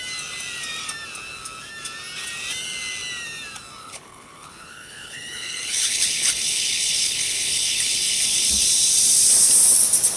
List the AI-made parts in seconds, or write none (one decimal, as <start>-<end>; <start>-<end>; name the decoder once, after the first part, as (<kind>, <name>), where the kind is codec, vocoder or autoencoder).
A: 3.8-8.5 (codec, HILCodec)